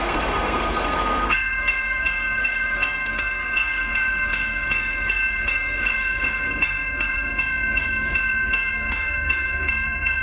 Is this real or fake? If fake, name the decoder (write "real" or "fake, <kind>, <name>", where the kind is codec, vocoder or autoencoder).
fake, codec, SNAC